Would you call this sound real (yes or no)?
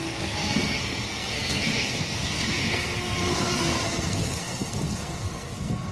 no